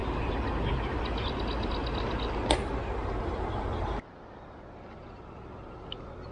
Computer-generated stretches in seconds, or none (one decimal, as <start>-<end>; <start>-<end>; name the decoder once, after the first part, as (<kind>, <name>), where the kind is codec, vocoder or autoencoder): none